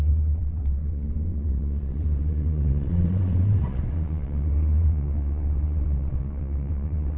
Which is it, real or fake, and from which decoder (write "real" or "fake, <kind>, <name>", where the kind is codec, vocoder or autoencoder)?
fake, vocoder, WaveNeXt